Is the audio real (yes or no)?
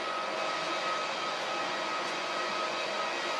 no